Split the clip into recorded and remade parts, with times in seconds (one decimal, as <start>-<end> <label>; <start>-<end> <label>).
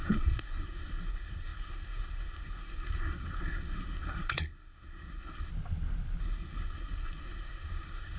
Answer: 0.0-5.5 remade; 5.5-6.2 recorded; 6.2-8.2 remade